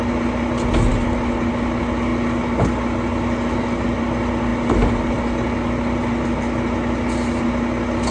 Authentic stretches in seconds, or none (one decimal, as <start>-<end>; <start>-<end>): 0.0-8.1